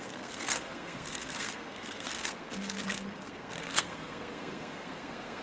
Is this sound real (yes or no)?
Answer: no